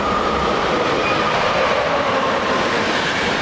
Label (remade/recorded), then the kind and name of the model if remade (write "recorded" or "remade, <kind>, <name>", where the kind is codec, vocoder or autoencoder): remade, vocoder, BigVGAN v2